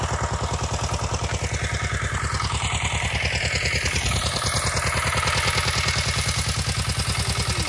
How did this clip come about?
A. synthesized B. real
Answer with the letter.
B